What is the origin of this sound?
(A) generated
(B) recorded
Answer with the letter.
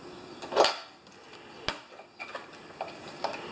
B